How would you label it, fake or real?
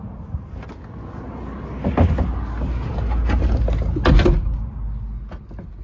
real